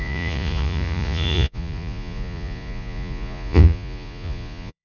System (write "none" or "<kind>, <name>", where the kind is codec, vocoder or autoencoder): vocoder, Vocos